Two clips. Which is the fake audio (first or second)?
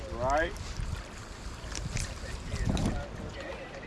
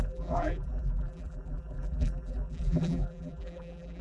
second